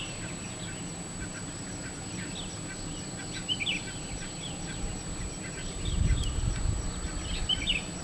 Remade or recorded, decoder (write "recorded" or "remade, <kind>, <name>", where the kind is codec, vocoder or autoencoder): recorded